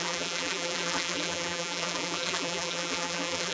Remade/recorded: remade